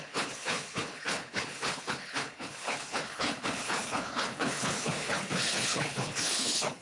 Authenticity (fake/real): fake